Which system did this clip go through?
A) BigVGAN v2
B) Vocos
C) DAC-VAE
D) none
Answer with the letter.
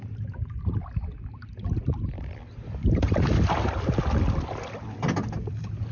D